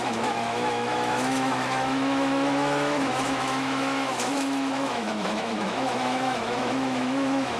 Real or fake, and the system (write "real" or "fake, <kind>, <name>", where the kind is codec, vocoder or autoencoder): fake, autoencoder, DAC-VAE